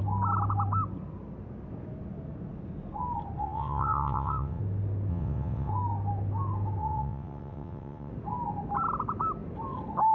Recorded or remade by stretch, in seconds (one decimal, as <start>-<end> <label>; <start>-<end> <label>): 0.0-3.4 recorded; 3.4-4.6 remade; 4.6-5.1 recorded; 5.1-5.7 remade; 5.7-6.8 recorded; 6.8-8.1 remade; 8.1-10.1 recorded